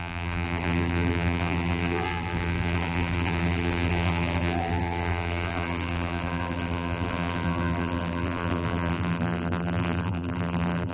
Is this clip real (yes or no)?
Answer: no